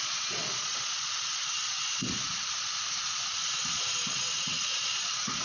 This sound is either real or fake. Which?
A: fake